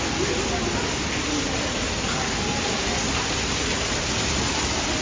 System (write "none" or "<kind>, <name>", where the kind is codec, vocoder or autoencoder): none